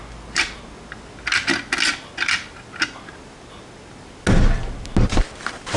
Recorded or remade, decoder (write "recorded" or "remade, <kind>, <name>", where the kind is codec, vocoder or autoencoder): recorded